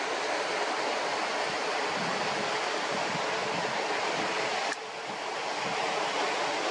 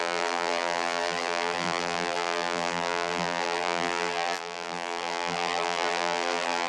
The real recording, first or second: first